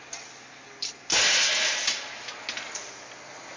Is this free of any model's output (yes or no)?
yes